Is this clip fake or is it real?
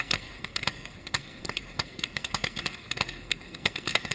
fake